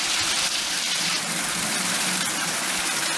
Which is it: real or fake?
real